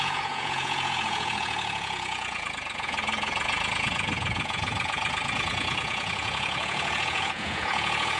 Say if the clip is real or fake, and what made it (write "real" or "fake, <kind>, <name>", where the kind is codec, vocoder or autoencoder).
fake, vocoder, Vocos